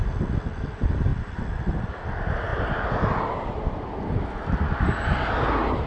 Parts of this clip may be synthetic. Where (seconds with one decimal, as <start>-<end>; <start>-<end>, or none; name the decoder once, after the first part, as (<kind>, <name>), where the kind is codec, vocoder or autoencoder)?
none